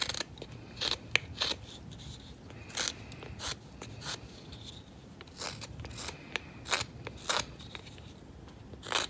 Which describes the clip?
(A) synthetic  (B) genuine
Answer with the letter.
B